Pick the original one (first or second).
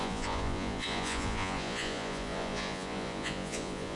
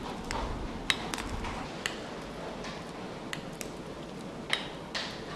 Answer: second